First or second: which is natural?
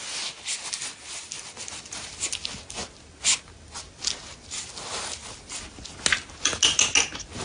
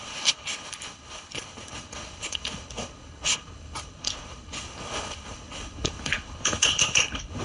first